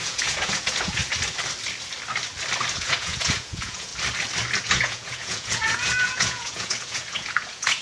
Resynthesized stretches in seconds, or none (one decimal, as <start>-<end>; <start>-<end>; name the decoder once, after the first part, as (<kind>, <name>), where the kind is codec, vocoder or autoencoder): 0.0-1.0 (vocoder, Vocos); 2.7-3.9; 4.6-7.8